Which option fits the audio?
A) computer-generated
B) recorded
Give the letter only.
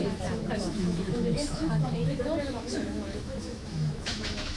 A